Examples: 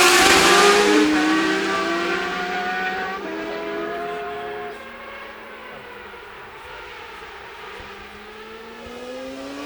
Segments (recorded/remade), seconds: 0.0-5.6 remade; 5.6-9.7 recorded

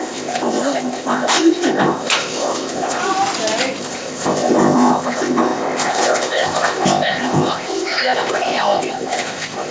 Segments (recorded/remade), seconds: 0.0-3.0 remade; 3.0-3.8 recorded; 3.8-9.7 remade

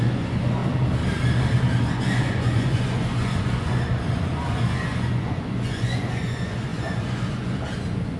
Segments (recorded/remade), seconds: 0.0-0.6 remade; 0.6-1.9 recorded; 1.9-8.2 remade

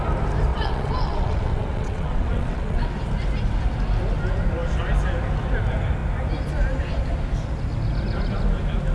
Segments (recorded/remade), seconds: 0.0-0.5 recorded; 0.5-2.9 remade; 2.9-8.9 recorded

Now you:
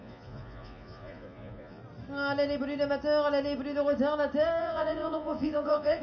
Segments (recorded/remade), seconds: 0.0-1.8 remade; 1.8-4.6 recorded; 4.6-6.0 remade